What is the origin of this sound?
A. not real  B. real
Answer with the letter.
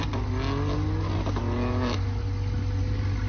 B